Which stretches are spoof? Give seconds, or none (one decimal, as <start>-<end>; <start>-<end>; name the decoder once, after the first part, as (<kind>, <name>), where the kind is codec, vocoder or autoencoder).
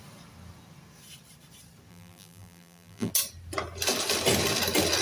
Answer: 1.9-3.1 (vocoder, BigVGAN v2)